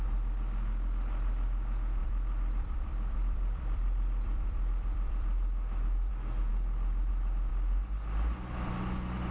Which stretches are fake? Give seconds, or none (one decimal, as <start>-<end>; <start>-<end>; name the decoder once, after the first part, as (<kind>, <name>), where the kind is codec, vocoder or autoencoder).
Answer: 2.0-6.1 (vocoder, BigVGAN v2)